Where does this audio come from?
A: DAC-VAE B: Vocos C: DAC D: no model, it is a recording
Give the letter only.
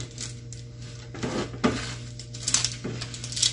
D